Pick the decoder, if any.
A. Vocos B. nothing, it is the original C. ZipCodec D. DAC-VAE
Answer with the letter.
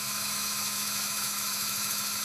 D